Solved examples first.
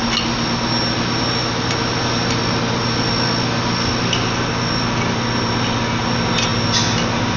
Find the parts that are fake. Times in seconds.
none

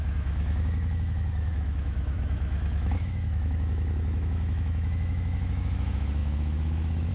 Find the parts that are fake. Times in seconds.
0.0-7.1 (autoencoder, DAC-VAE)

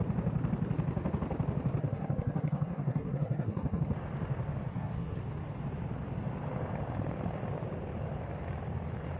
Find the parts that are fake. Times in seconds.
1.8-3.8 (codec, SNAC); 4.7-5.2

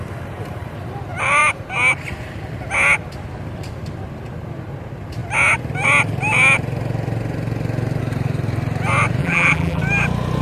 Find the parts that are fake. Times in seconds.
9.2-9.8 (vocoder, BigVGAN v2)

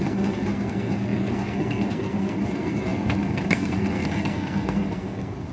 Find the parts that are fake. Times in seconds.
0.0-5.5 (codec, SNAC)

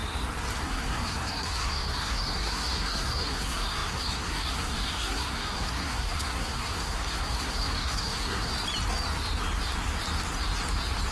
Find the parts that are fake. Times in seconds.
0.6-8.5 (codec, SNAC)

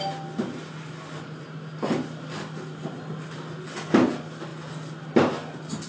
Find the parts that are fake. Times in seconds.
none